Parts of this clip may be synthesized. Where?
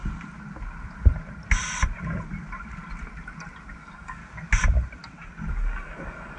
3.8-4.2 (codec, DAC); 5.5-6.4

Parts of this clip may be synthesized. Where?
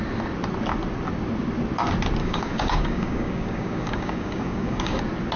2.2-5.0 (codec, DAC)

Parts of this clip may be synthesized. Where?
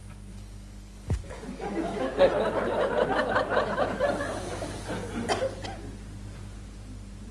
0.0-2.3 (codec, DAC)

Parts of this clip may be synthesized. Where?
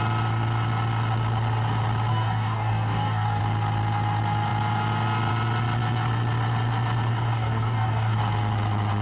2.1-3.4 (codec, DAC); 7.1-8.2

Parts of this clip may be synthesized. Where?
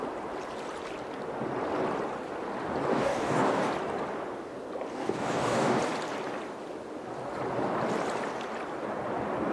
2.9-3.7 (codec, DAC); 4.9-5.8